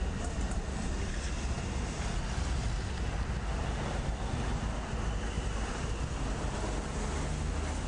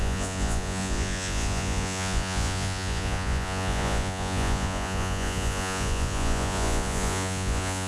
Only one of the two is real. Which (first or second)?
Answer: first